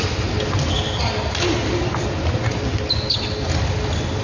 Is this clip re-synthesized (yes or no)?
no